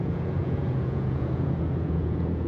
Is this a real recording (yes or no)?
no